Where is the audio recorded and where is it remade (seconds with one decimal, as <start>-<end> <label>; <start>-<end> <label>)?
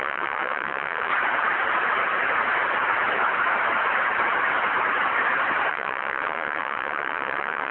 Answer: 0.0-1.1 remade; 1.1-5.7 recorded; 5.7-7.7 remade